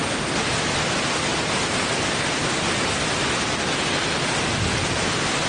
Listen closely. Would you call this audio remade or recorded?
recorded